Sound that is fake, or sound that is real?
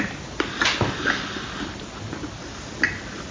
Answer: real